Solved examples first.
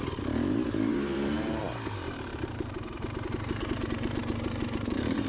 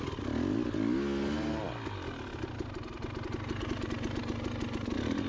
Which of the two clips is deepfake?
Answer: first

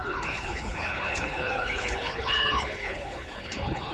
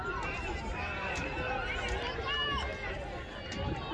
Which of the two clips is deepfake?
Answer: first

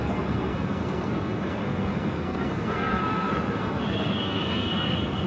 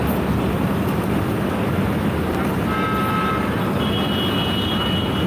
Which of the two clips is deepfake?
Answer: first